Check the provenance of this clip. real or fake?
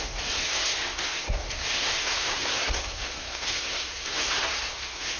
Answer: fake